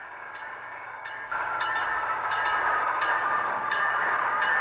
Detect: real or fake fake